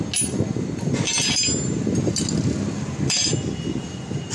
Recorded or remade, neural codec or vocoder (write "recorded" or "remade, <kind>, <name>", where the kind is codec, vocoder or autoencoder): recorded